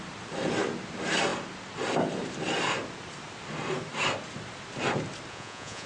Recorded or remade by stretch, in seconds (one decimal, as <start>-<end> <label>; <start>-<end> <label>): 0.0-5.3 recorded; 5.3-5.9 remade